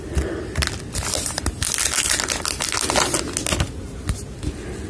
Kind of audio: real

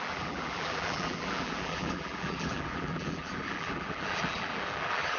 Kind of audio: fake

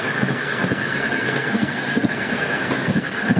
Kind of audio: fake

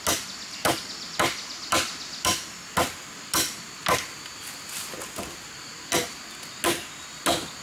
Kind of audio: real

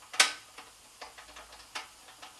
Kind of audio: real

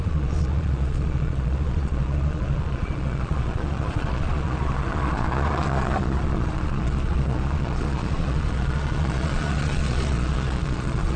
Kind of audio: fake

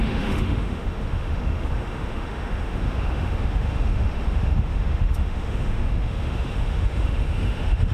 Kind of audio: fake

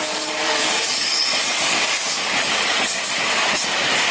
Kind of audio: fake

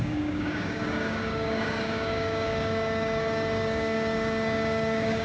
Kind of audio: fake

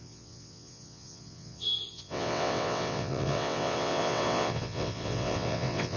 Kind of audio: fake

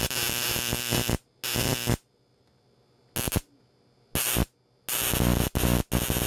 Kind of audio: real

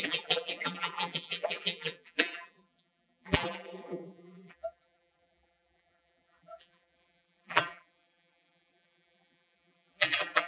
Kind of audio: fake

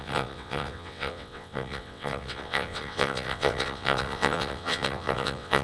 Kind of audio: fake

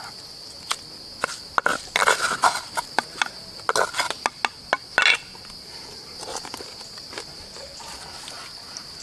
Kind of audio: real